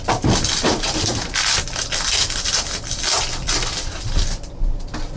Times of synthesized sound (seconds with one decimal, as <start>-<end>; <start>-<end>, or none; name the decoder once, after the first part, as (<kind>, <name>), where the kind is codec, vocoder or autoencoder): none